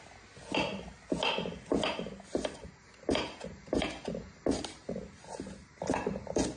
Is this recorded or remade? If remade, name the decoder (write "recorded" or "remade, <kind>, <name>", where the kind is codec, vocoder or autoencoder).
recorded